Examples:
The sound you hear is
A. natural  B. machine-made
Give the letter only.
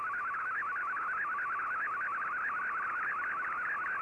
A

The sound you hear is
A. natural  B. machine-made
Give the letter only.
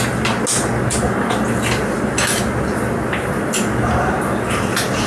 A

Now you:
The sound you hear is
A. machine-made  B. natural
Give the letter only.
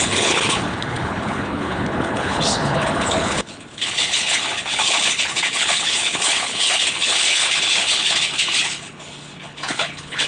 A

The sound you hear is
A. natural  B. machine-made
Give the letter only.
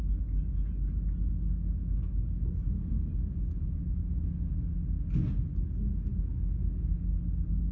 A